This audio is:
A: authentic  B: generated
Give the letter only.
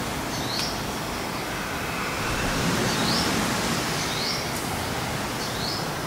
A